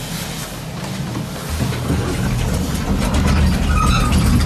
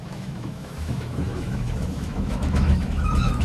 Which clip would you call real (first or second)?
first